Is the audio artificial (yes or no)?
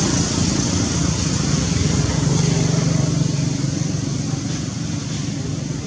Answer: no